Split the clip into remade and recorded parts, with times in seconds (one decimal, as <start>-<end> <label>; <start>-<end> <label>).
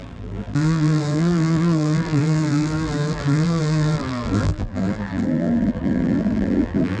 0.0-7.0 remade